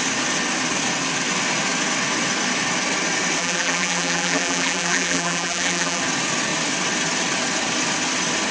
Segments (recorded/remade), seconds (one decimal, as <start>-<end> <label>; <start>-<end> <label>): 0.0-3.4 recorded; 3.4-6.0 remade; 6.0-8.5 recorded